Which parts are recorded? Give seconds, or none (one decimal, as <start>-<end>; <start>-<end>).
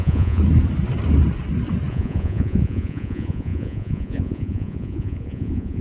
0.4-1.9